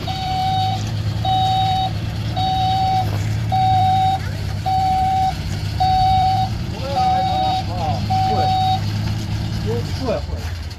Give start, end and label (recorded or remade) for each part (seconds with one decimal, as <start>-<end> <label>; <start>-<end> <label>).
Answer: 0.0-8.4 remade; 8.4-9.8 recorded; 9.8-10.8 remade